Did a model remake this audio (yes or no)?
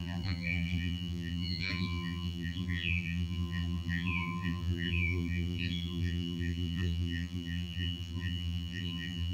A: yes